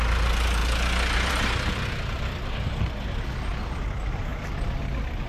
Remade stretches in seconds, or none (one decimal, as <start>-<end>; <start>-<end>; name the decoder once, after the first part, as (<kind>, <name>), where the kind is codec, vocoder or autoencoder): none